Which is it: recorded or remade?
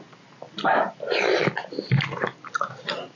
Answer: recorded